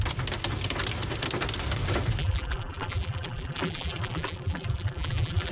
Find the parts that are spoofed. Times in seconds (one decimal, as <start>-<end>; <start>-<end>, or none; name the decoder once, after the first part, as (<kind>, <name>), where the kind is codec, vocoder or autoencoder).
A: 2.2-5.5 (vocoder, BigVGAN v2)